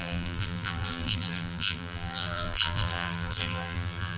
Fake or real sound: fake